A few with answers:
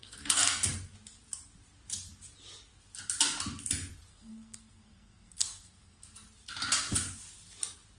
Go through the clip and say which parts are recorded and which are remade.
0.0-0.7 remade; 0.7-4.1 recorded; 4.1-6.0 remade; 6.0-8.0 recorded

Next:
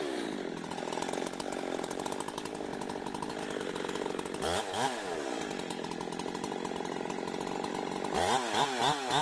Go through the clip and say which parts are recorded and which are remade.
0.0-9.2 recorded

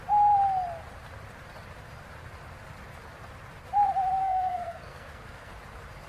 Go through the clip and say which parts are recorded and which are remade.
0.0-4.2 recorded; 4.2-5.5 remade; 5.5-6.1 recorded

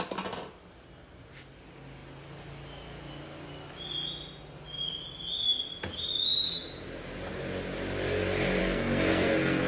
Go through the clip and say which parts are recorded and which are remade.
0.0-8.6 recorded; 8.6-9.7 remade

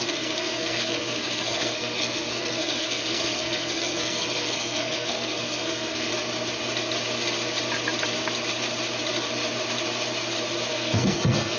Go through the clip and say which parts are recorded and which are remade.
0.0-6.1 remade; 6.1-10.7 recorded; 10.7-11.6 remade

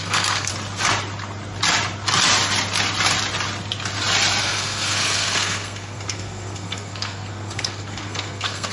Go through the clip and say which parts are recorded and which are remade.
0.0-0.5 remade; 0.5-4.4 recorded; 4.4-8.7 remade

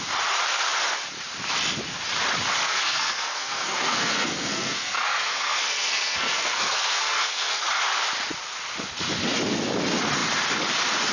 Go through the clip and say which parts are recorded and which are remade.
0.0-2.6 recorded; 2.6-7.6 remade; 7.6-11.1 recorded